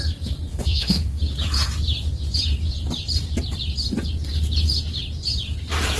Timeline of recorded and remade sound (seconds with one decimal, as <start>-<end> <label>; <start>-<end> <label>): 0.0-0.5 recorded; 0.5-1.2 remade; 1.2-6.0 recorded